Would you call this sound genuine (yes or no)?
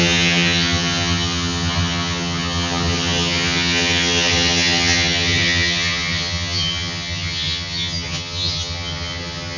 no